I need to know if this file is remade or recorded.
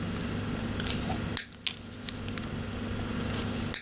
recorded